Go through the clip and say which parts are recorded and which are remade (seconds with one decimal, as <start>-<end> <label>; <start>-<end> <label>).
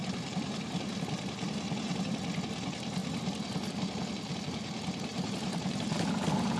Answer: 0.0-1.0 remade; 1.0-5.1 recorded; 5.1-6.6 remade